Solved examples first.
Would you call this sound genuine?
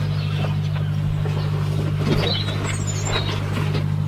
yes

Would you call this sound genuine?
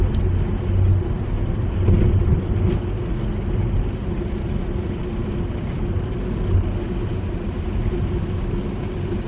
yes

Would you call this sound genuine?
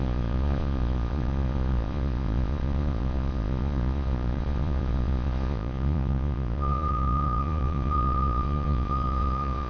no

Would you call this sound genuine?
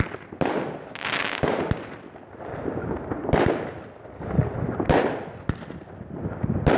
yes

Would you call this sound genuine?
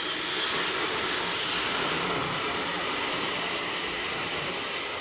yes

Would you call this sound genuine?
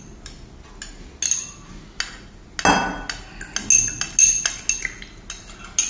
yes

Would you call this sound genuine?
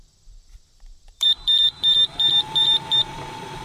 no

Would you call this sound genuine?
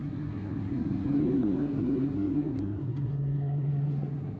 no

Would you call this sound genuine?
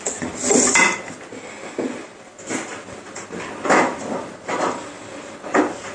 yes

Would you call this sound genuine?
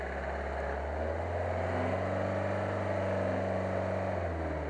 yes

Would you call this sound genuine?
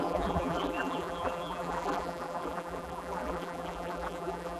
no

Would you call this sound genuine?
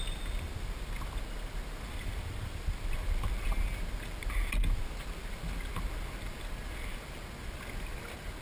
yes